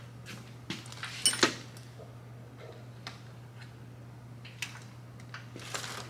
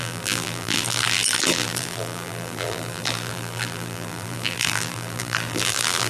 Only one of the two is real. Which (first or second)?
first